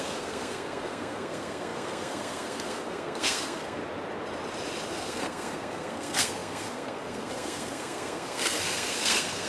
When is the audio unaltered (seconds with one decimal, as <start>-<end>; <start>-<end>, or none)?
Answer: 3.8-4.9